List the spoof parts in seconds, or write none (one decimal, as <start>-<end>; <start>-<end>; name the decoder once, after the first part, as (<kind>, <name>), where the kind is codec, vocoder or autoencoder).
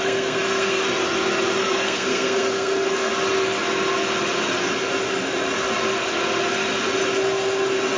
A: 0.0-0.8 (codec, SNAC); 1.6-3.1